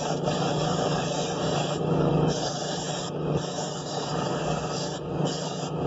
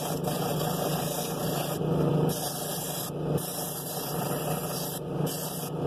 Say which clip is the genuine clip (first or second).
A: second